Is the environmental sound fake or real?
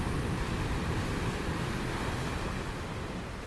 real